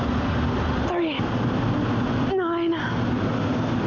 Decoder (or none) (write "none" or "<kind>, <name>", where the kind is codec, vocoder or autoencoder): none